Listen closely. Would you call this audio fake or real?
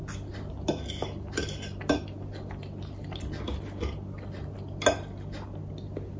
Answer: real